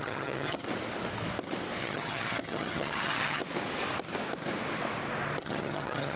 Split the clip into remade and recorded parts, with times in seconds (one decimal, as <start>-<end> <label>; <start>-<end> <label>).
0.0-0.6 remade; 0.6-1.8 recorded; 1.8-3.4 remade; 3.4-5.4 recorded; 5.4-6.2 remade